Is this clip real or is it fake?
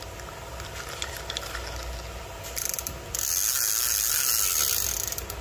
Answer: real